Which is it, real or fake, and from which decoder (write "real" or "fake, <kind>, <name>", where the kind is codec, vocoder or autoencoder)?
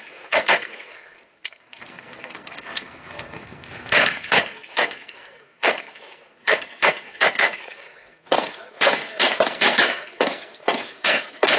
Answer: fake, codec, SNAC